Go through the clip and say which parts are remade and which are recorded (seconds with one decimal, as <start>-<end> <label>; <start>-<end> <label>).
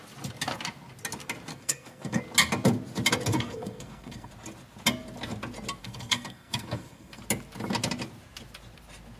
0.0-1.5 recorded; 1.5-2.2 remade; 2.2-3.3 recorded; 3.3-4.3 remade; 4.3-5.8 recorded; 5.8-7.2 remade; 7.2-9.2 recorded